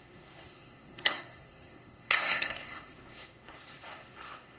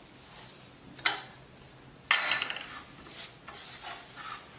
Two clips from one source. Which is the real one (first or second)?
second